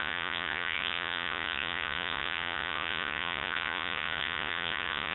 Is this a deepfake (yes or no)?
yes